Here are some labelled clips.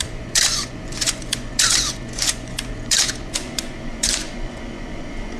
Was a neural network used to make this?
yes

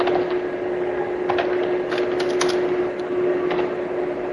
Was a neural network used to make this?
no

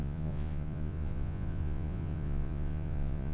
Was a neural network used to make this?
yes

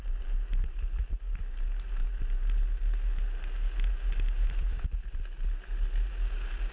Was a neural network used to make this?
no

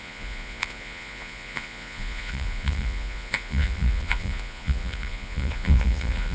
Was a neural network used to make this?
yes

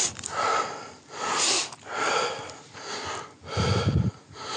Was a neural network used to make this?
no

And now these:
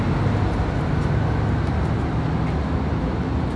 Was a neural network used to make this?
no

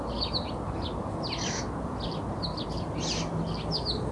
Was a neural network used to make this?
no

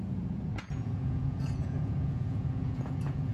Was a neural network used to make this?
yes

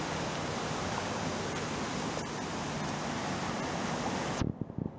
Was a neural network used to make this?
no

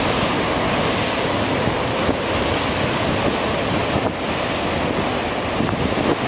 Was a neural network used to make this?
no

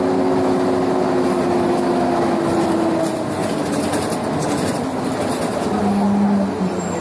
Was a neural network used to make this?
no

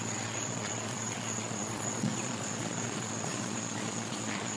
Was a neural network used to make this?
yes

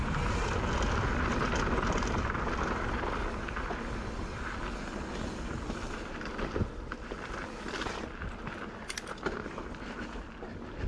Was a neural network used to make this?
no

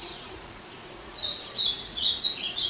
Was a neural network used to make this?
yes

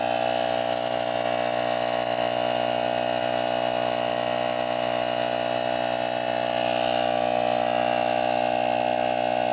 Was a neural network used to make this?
no